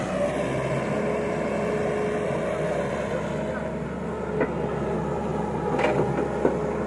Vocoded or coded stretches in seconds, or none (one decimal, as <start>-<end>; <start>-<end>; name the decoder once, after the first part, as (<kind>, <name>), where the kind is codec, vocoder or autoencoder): none